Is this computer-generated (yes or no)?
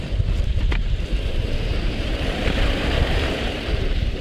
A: yes